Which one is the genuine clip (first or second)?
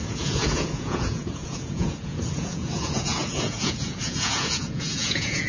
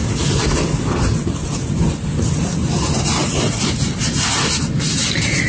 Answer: second